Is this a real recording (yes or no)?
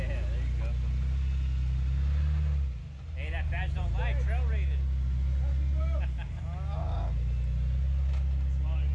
yes